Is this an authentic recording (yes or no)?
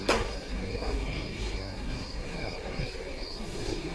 no